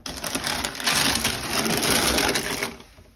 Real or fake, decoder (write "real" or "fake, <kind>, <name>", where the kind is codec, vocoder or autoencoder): real